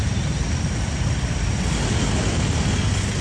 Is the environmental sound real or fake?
real